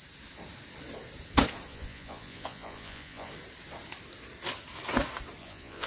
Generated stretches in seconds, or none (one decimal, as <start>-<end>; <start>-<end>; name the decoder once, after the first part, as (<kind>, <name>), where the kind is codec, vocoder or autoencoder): 1.7-3.3 (vocoder, Vocos); 5.4-5.9